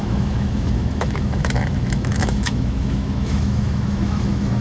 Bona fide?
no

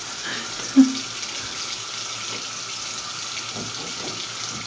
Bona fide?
yes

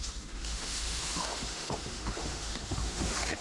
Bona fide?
no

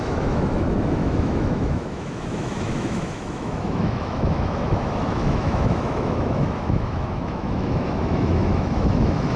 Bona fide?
no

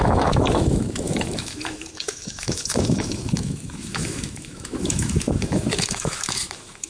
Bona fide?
no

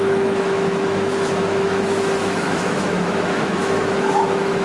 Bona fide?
no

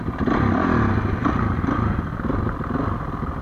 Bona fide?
yes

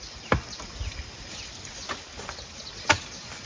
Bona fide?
yes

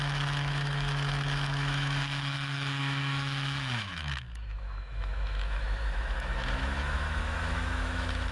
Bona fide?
no